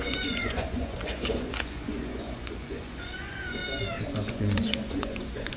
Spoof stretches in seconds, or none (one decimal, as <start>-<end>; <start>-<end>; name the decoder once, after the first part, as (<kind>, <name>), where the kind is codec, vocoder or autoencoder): 0.0-3.6 (vocoder, Vocos); 4.3-5.6

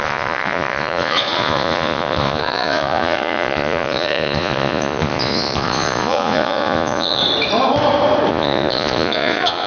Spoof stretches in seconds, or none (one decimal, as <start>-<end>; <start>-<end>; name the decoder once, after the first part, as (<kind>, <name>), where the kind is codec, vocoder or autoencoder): 0.0-7.2 (vocoder, Vocos); 8.3-9.7

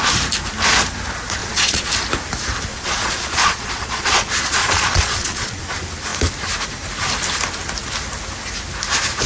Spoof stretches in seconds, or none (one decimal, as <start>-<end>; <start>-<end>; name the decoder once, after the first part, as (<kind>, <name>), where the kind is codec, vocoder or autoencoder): 1.4-1.9 (vocoder, Vocos); 2.7-5.6

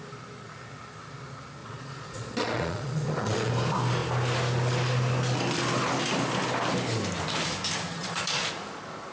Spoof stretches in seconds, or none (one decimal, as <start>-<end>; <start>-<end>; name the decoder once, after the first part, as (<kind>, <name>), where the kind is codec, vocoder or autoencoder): 1.6-3.5 (vocoder, Vocos); 7.9-8.5